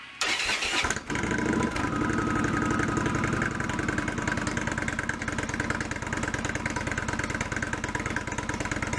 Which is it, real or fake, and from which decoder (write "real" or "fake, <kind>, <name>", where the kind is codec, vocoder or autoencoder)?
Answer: real